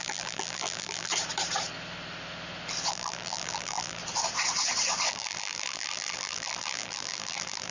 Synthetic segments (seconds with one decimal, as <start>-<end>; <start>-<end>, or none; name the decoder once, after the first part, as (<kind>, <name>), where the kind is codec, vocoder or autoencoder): 0.0-1.1 (vocoder, BigVGAN v2); 2.9-4.0; 5.1-7.7